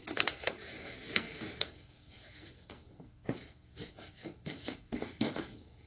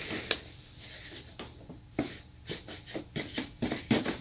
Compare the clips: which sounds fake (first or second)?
first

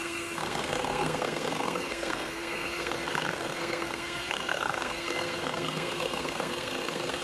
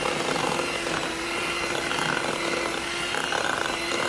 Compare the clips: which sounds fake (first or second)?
first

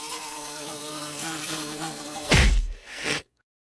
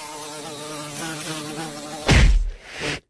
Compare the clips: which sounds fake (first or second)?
first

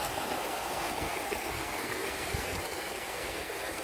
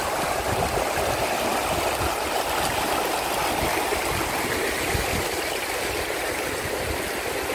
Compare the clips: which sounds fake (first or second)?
first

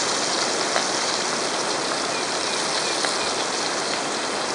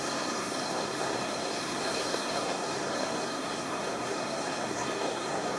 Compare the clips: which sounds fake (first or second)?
second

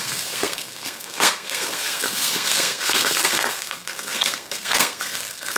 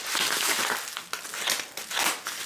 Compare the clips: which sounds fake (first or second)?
first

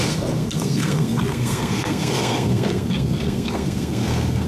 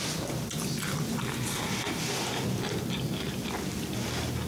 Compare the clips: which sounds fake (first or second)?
first